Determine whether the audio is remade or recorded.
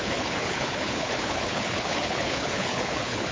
remade